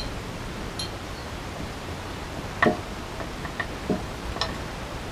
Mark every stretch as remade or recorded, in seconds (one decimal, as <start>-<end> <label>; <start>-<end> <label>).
0.0-1.2 recorded; 1.2-2.2 remade; 2.2-5.1 recorded